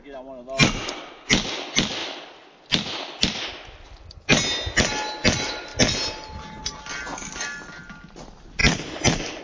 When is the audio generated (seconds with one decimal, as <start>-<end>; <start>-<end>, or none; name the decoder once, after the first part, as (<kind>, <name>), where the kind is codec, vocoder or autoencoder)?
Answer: none